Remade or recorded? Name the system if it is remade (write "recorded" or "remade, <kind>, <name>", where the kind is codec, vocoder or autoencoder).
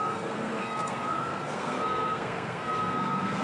remade, codec, SNAC